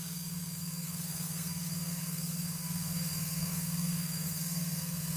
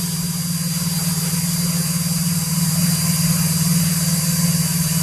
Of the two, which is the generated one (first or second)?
first